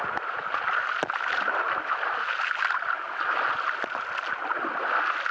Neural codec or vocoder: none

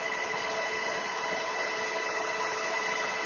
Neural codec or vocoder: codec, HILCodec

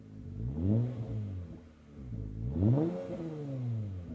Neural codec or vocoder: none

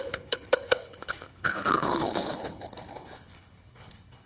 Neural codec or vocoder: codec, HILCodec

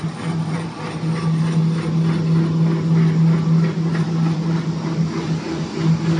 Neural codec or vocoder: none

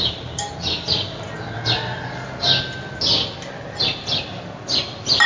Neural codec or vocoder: none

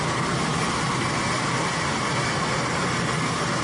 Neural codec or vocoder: none